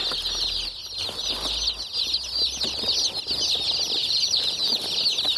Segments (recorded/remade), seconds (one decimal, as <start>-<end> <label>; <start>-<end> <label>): 0.0-4.0 recorded; 4.0-4.8 remade; 4.8-5.4 recorded